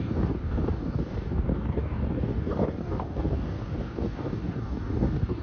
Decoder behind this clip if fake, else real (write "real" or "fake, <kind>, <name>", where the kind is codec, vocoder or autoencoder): fake, codec, DAC